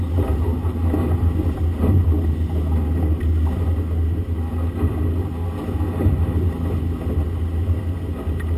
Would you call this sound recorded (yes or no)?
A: yes